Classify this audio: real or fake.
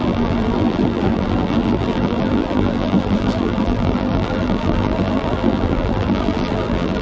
fake